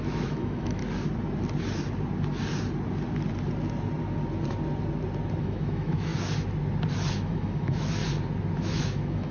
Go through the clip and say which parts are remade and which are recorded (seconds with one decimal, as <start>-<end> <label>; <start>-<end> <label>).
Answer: 0.0-0.8 remade; 0.8-5.4 recorded; 5.4-6.1 remade; 6.1-7.1 recorded; 7.1-8.0 remade; 8.0-8.6 recorded; 8.6-9.3 remade